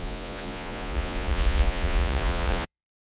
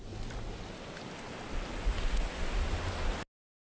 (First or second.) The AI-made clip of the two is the first